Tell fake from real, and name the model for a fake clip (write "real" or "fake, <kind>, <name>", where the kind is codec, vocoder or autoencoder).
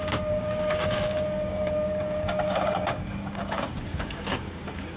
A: fake, codec, DAC